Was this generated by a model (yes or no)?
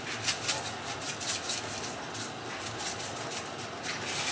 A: no